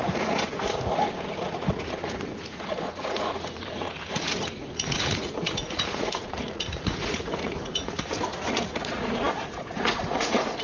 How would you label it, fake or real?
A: fake